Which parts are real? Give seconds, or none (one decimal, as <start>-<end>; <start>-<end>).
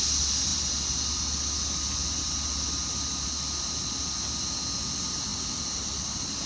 0.0-6.5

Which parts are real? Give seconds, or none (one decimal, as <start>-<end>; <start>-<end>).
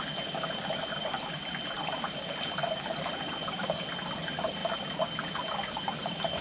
0.0-6.4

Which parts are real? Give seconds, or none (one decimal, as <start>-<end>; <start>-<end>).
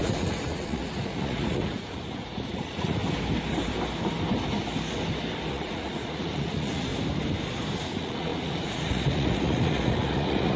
3.0-5.5; 6.9-7.8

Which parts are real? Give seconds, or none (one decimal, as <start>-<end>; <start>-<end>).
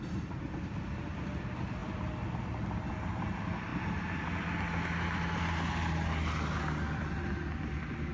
0.0-8.1